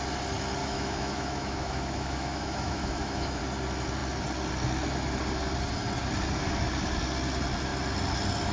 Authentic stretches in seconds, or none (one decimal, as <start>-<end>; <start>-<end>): 0.0-0.6; 3.4-8.5